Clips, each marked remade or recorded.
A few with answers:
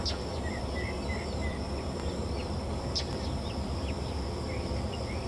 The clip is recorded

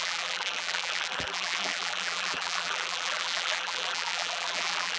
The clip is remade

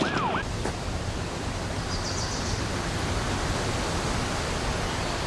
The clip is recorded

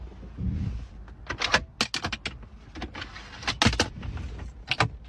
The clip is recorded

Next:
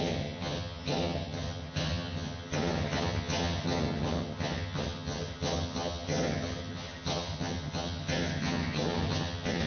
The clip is remade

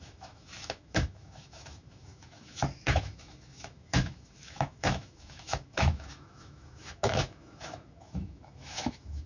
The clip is remade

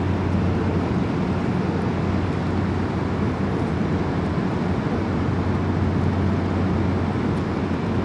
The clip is recorded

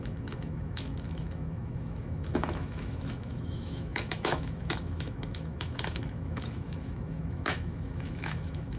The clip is remade